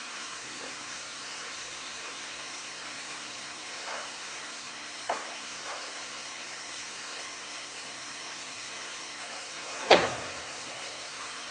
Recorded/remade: remade